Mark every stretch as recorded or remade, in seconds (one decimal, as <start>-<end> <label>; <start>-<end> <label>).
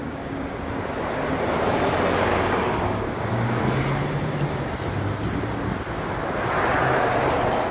0.0-0.6 remade; 0.6-2.3 recorded; 2.3-3.6 remade; 3.6-7.7 recorded